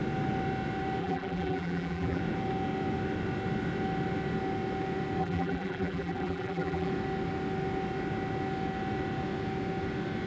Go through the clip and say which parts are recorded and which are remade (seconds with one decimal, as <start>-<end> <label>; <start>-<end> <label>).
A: 0.0-1.0 recorded; 1.0-2.2 remade; 2.2-5.2 recorded; 5.2-6.9 remade; 6.9-10.3 recorded

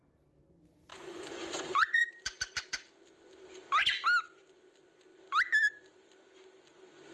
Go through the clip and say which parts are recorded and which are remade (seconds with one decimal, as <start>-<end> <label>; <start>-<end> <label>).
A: 0.0-0.9 recorded; 0.9-2.0 remade; 2.0-7.1 recorded